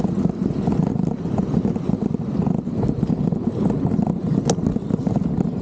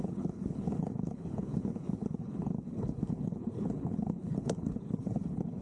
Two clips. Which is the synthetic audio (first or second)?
second